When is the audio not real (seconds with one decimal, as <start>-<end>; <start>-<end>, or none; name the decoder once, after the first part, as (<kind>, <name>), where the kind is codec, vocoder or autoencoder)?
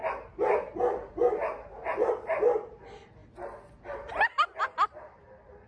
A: none